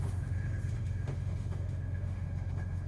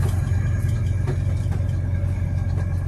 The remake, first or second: first